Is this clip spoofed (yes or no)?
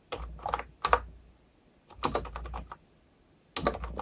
no